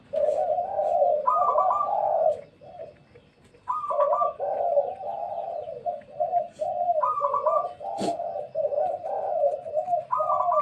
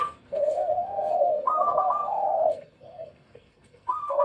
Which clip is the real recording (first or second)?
first